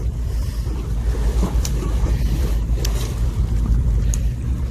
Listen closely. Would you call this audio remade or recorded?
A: remade